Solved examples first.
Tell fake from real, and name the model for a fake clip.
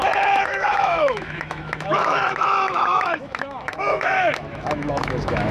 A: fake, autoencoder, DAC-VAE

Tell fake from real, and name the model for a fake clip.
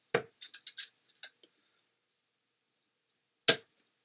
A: real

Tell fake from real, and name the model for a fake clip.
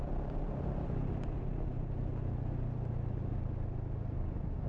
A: real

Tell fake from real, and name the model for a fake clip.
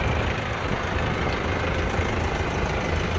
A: real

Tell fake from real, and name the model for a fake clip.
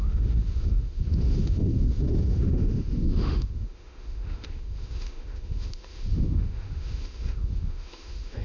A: fake, autoencoder, DAC-VAE